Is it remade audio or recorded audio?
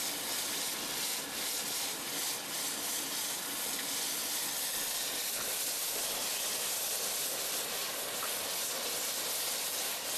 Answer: recorded